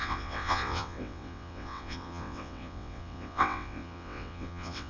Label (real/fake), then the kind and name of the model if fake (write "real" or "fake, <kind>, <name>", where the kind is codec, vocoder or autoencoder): fake, vocoder, WaveNeXt